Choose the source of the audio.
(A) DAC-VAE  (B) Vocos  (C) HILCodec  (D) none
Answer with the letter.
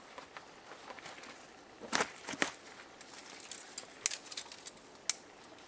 D